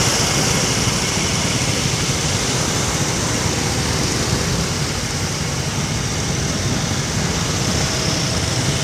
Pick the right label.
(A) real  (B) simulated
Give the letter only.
A